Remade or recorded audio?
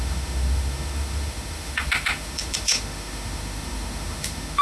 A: remade